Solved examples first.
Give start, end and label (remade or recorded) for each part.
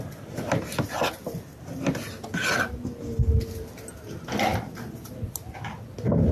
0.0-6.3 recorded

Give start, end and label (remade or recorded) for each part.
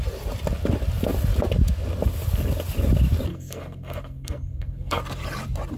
0.0-3.3 recorded; 3.3-5.0 remade; 5.0-5.8 recorded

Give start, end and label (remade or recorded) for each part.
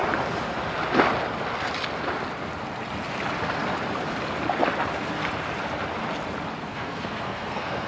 0.0-6.6 recorded; 6.6-7.9 remade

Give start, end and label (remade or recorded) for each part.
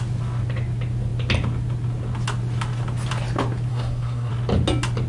0.0-3.7 recorded; 3.7-4.3 remade; 4.3-5.1 recorded